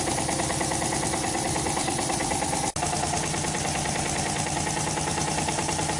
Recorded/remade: recorded